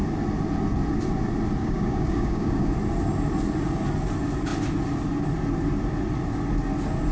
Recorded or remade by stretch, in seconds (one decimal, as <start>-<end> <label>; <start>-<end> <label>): 0.0-1.6 recorded; 1.6-2.7 remade; 2.7-7.1 recorded